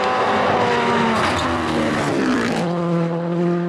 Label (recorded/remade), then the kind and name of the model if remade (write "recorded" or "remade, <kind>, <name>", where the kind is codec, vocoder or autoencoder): recorded